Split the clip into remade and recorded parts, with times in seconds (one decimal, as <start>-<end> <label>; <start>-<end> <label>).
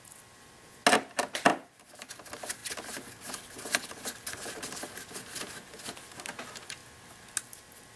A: 0.0-1.5 recorded; 1.5-2.1 remade; 2.1-2.6 recorded; 2.6-3.9 remade; 3.9-8.0 recorded